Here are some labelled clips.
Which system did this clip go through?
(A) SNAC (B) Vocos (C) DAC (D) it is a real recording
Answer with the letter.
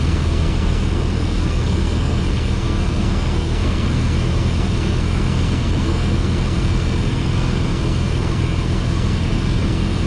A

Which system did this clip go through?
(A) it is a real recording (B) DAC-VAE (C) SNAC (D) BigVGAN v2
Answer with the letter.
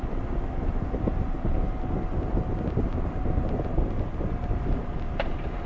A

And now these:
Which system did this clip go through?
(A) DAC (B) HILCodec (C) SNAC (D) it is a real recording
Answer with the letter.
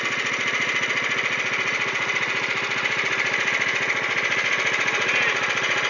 D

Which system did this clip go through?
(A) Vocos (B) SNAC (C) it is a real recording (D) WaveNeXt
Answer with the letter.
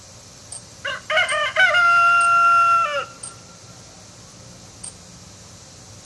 C